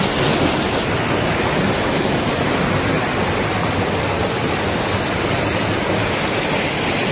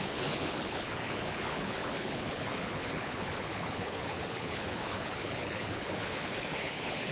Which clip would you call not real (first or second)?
second